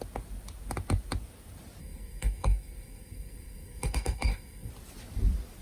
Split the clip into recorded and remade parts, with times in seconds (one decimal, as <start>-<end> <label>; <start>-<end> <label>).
0.0-1.8 recorded; 1.8-4.7 remade; 4.7-5.6 recorded